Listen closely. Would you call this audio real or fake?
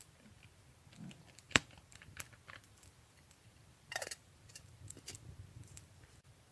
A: fake